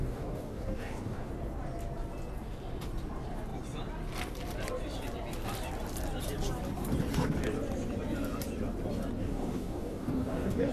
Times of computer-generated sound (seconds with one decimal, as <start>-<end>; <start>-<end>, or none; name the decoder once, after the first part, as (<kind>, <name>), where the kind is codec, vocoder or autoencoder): 0.0-1.3 (codec, DAC); 9.2-10.7